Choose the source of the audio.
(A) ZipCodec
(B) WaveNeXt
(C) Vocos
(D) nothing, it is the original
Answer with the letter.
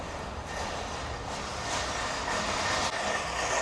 D